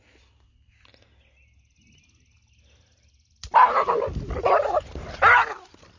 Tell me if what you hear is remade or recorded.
recorded